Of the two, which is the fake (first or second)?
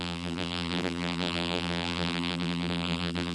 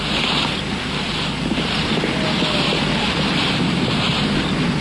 first